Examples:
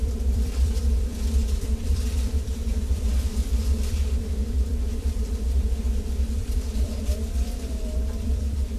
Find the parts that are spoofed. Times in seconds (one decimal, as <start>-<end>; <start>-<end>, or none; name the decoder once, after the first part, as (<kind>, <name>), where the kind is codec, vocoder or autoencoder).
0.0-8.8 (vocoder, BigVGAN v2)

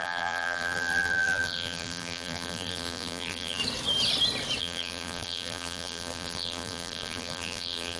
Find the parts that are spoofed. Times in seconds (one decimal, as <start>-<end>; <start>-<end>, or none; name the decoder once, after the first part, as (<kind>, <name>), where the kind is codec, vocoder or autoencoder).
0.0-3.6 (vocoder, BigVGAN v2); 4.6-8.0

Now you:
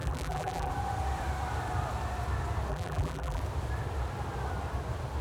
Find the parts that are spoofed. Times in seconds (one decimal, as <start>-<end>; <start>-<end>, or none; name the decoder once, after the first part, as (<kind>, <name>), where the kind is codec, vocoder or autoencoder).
0.0-0.7 (vocoder, BigVGAN v2); 2.7-3.4

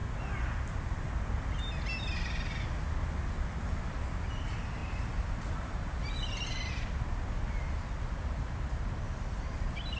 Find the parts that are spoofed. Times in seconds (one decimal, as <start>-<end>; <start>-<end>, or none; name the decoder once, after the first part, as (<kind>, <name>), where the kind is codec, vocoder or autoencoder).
none